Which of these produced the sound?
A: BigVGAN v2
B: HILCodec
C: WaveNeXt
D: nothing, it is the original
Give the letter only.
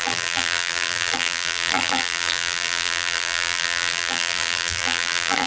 A